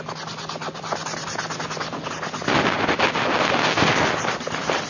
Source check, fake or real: real